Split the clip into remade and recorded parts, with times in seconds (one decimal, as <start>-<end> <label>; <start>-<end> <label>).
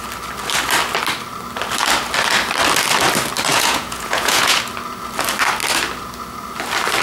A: 0.0-3.5 recorded; 3.5-4.6 remade; 4.6-7.0 recorded